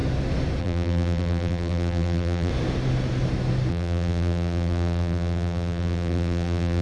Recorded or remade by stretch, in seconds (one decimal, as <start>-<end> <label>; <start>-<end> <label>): 0.0-0.6 recorded; 0.6-2.5 remade; 2.5-3.7 recorded; 3.7-6.8 remade